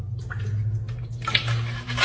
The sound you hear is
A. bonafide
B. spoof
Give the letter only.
A